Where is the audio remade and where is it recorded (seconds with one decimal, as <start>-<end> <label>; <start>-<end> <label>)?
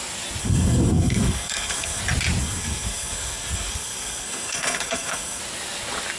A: 0.0-0.4 recorded; 0.4-2.0 remade; 2.0-2.4 recorded; 2.4-5.4 remade; 5.4-6.2 recorded